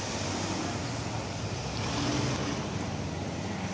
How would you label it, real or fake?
real